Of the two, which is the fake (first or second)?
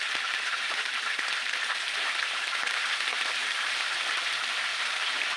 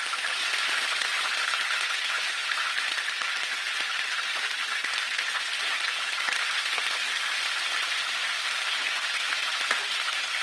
first